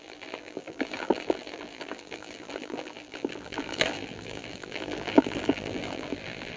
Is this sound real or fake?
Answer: fake